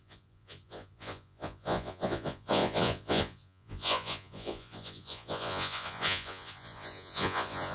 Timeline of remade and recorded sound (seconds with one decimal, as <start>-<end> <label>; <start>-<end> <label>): 0.0-7.7 remade